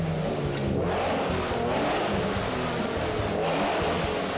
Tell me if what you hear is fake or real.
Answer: real